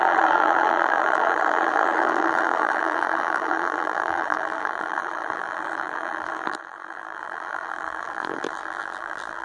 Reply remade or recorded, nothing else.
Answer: remade